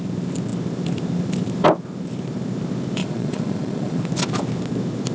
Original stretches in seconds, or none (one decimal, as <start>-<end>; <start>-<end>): 0.0-3.0; 4.0-5.1